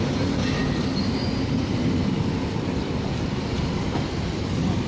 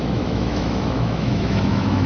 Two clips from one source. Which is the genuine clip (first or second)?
first